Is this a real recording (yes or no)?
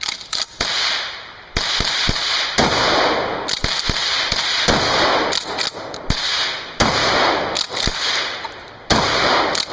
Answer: yes